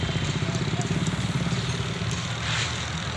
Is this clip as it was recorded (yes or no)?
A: yes